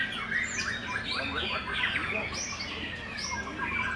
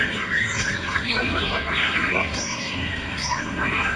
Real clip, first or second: first